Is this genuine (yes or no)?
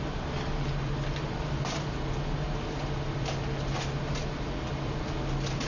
yes